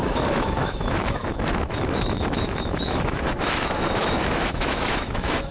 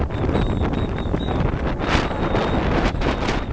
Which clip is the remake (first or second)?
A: first